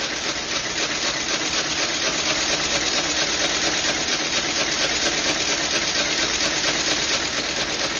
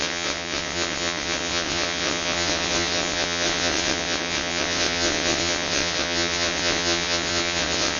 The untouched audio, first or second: first